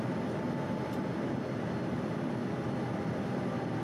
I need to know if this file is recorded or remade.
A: recorded